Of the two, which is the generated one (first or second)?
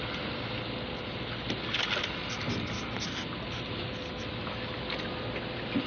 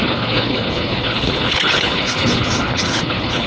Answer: second